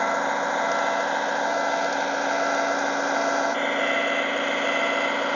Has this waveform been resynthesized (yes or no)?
no